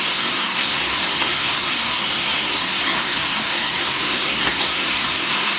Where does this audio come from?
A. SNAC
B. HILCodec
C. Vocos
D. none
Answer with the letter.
A